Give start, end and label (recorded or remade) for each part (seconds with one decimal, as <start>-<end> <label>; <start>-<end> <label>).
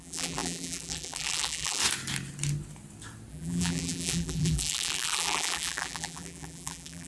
0.0-1.8 remade; 1.8-3.3 recorded; 3.3-7.1 remade